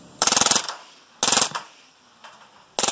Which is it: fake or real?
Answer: real